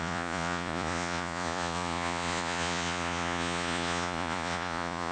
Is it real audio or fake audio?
fake